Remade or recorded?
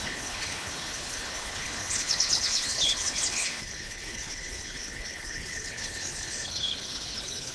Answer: remade